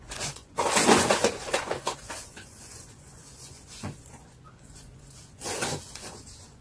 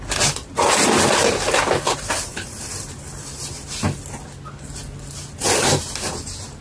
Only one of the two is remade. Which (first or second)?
first